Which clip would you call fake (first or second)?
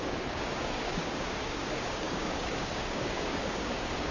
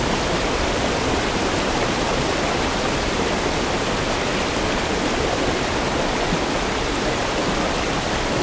first